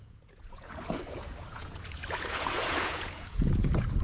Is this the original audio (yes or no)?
no